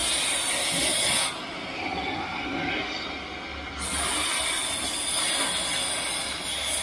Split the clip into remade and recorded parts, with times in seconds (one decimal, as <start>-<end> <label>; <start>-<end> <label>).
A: 0.0-6.8 recorded